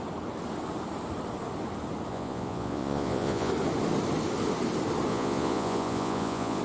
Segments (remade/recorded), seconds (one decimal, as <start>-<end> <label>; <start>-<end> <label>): 0.0-2.1 recorded; 2.1-3.5 remade; 3.5-5.1 recorded; 5.1-6.6 remade